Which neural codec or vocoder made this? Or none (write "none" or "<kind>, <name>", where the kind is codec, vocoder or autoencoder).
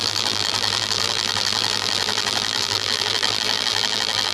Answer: vocoder, BigVGAN v2